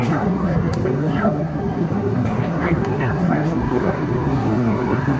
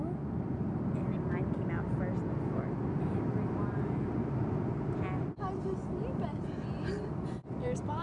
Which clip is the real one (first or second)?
second